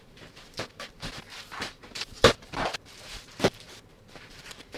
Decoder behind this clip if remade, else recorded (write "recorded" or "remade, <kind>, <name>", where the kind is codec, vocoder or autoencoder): remade, vocoder, BigVGAN v2